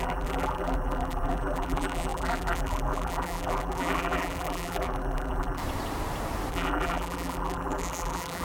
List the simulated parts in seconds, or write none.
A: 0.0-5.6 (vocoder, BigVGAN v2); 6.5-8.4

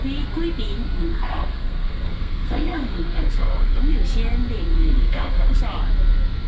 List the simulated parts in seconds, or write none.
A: 1.1-3.8 (codec, SNAC); 4.7-5.6